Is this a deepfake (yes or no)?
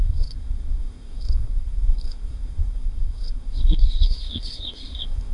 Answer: yes